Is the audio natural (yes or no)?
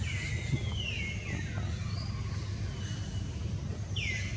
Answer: yes